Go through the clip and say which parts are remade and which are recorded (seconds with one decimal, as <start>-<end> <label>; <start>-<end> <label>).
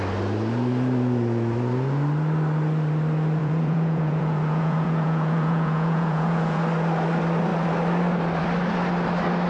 0.0-3.4 recorded; 3.4-6.6 remade; 6.6-9.5 recorded